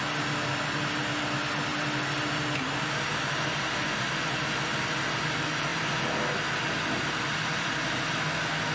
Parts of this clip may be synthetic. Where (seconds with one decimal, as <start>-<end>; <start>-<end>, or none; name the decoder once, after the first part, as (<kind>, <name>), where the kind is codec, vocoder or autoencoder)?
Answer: none